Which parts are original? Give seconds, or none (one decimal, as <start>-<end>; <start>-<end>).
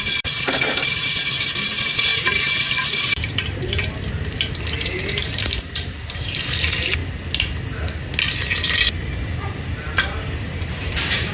7.0-10.4